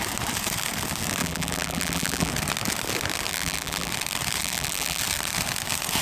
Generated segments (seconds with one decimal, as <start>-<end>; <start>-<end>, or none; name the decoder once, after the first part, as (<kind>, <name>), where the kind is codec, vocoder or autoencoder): 1.2-2.3 (vocoder, BigVGAN v2); 3.3-3.9; 4.4-5.0